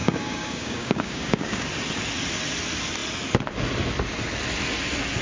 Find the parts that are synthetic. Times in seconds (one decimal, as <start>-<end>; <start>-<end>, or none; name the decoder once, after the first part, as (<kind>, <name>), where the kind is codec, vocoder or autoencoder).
0.0-1.7 (codec, DAC)